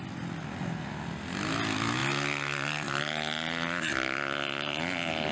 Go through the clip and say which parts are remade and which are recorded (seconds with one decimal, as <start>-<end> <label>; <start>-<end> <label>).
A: 0.0-5.3 recorded

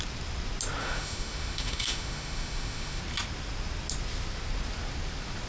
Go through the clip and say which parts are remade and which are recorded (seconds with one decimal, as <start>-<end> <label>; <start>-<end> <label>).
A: 0.0-0.8 recorded; 0.8-3.0 remade; 3.0-5.5 recorded